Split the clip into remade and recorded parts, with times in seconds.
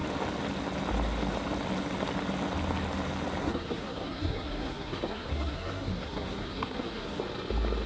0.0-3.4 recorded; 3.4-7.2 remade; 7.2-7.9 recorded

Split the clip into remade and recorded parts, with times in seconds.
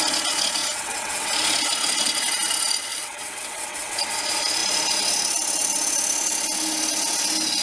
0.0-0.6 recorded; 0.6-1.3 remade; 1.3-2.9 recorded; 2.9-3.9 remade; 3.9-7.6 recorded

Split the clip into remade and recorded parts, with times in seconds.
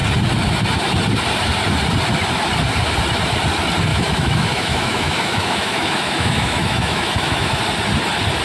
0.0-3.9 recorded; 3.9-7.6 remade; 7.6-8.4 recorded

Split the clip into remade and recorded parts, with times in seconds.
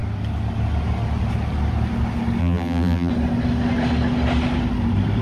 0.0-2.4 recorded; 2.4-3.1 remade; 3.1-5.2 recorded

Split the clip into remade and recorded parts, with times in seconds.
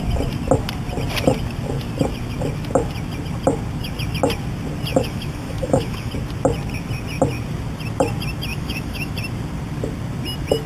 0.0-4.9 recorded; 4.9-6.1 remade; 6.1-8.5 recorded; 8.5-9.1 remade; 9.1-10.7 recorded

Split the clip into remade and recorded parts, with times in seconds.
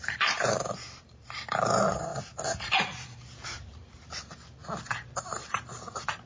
0.0-4.6 remade; 4.6-5.2 recorded; 5.2-6.3 remade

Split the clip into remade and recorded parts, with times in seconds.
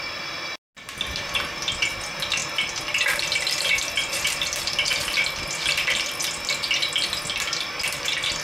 0.0-8.4 recorded